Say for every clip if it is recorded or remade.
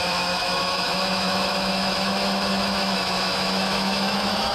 remade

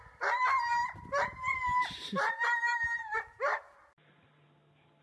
remade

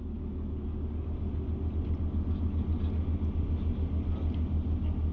recorded